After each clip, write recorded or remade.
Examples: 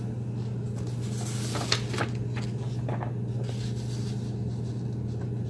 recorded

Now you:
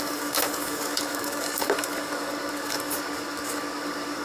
remade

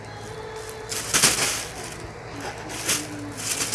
recorded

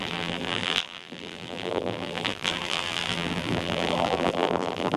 remade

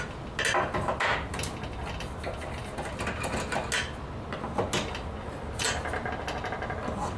recorded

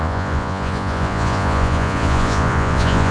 remade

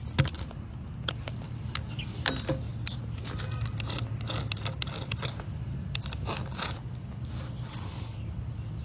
recorded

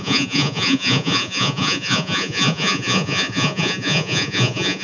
remade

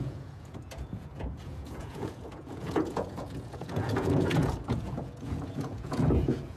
remade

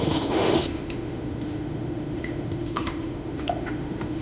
remade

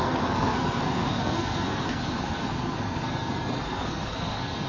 remade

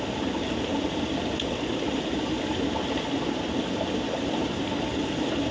recorded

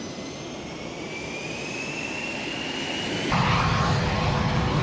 recorded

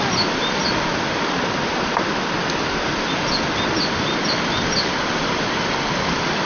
recorded